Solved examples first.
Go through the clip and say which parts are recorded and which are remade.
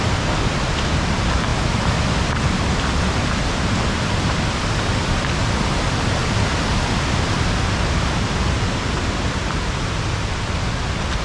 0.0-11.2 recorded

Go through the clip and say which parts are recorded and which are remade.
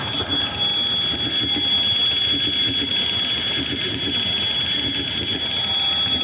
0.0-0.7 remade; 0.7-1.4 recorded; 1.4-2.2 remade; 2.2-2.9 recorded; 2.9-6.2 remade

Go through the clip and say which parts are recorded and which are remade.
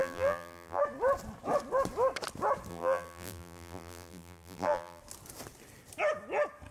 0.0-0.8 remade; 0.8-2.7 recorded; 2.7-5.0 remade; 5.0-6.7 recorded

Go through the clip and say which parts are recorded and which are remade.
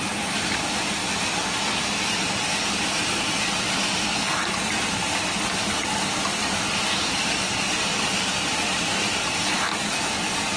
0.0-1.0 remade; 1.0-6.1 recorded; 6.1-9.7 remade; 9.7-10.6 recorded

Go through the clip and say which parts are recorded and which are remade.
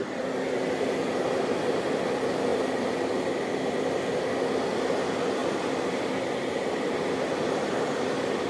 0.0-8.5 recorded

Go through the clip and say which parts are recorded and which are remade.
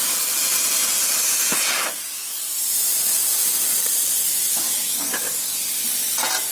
0.0-6.5 recorded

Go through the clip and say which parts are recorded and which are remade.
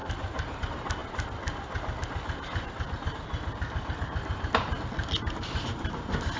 0.0-6.4 recorded